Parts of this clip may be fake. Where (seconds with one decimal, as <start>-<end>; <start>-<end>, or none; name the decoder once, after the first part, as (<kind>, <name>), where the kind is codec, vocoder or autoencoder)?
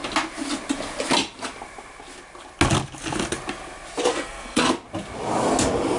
4.1-4.7 (codec, SNAC)